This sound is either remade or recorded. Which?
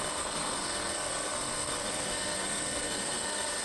remade